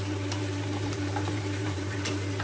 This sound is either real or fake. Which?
fake